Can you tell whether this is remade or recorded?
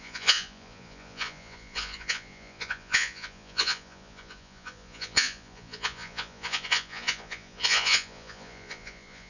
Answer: remade